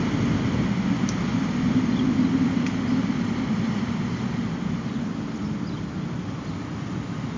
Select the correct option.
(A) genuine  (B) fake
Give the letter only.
A